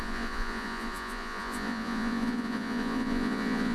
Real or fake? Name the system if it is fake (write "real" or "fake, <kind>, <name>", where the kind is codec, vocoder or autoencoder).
fake, vocoder, Vocos